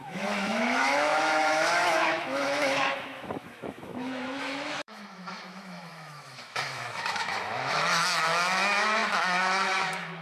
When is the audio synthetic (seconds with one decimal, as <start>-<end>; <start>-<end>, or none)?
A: 0.0-10.2